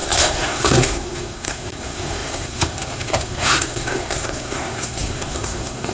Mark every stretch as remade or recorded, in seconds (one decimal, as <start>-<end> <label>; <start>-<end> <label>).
0.0-5.9 remade